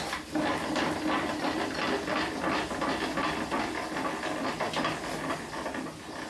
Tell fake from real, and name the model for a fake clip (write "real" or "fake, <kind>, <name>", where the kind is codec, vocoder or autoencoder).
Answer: real